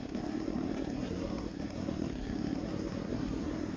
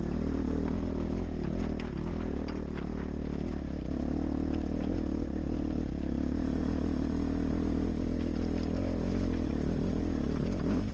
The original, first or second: second